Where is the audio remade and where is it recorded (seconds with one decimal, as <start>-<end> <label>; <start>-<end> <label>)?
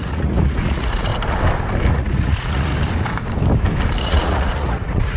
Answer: 0.0-1.1 remade; 1.1-1.9 recorded; 1.9-2.7 remade; 2.7-4.0 recorded; 4.0-5.2 remade